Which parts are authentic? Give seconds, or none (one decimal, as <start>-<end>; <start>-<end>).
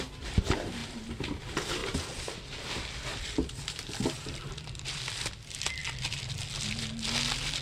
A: 0.0-3.1; 5.1-5.8; 6.4-7.6